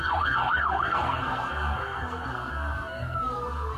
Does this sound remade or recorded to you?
remade